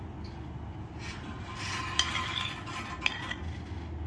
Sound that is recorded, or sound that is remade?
recorded